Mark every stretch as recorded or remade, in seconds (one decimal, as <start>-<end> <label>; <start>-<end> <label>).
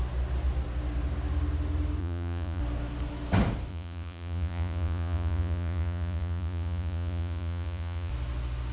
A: 0.0-2.0 recorded; 2.0-2.6 remade; 2.6-3.7 recorded; 3.7-8.1 remade; 8.1-8.7 recorded